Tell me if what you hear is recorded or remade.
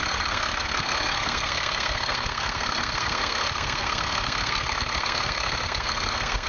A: remade